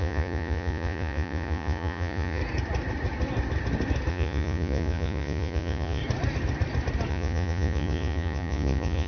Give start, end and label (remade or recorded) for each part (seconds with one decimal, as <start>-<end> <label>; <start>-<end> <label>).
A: 0.0-2.4 remade; 2.4-4.1 recorded; 4.1-6.0 remade; 6.0-7.1 recorded; 7.1-9.1 remade